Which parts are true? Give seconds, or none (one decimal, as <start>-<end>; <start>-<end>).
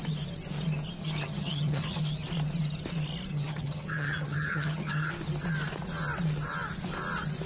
0.0-1.0; 2.0-3.3; 5.1-7.5